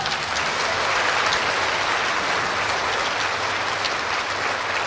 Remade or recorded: recorded